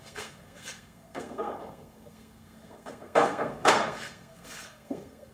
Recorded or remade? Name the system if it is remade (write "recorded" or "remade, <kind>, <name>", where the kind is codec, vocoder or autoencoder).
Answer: remade, codec, SNAC